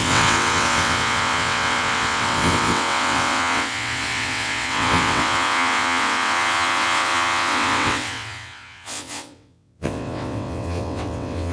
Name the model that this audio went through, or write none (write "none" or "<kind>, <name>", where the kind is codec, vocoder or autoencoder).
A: vocoder, WaveNeXt